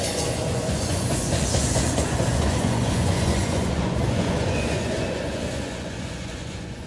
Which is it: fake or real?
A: fake